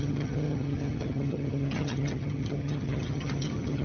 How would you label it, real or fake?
fake